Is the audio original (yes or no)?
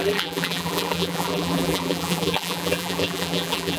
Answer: no